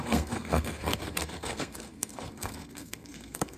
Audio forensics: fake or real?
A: fake